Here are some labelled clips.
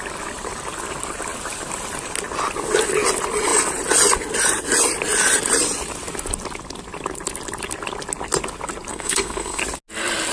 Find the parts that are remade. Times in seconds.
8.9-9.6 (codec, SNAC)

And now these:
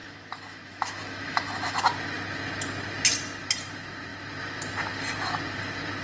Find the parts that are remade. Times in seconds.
0.0-1.8 (autoencoder, DAC-VAE)

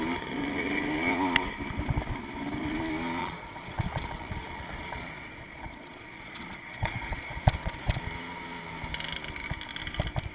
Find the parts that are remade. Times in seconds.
3.2-8.0 (vocoder, Vocos)